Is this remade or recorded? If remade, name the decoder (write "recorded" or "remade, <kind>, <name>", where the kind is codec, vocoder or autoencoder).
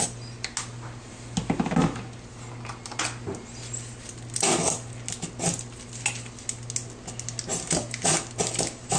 recorded